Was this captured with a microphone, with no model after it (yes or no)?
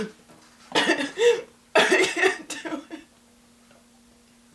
yes